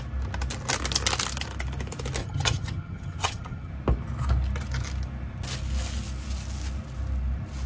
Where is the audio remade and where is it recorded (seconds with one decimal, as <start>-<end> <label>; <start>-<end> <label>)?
0.0-2.2 recorded; 2.2-3.7 remade; 3.7-7.7 recorded